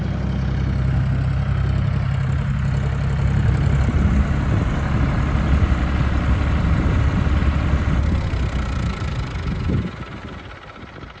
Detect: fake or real real